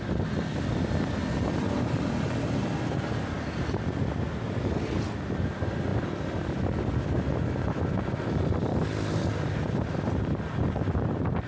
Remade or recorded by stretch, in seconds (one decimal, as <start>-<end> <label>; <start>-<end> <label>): 0.0-11.5 recorded